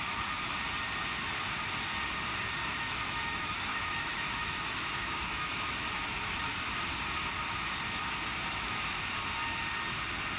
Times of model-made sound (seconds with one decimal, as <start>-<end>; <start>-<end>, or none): 2.6-6.7; 8.3-9.0